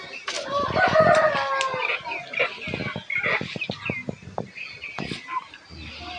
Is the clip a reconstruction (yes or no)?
no